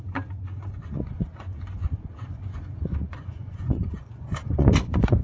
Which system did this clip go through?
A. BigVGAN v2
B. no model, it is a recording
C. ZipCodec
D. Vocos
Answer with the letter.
D